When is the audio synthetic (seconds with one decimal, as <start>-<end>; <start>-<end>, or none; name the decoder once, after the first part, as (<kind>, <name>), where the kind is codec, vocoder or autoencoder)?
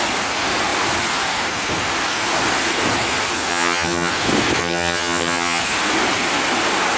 3.5-4.1 (vocoder, HiFi-GAN); 4.6-5.6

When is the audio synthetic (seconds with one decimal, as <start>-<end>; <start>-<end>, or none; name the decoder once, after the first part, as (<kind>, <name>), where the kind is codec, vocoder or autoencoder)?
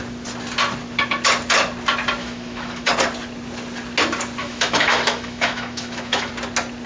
2.2-2.9 (autoencoder, DAC-VAE); 4.4-6.3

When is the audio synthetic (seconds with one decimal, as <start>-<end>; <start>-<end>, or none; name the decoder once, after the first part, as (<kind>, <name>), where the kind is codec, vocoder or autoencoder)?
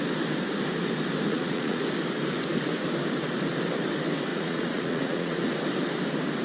1.3-1.8 (vocoder, Vocos); 4.3-5.5